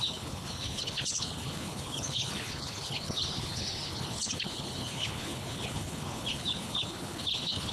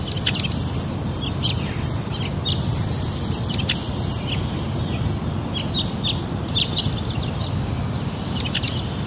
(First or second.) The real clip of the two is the second